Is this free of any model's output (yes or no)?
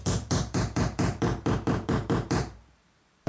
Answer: no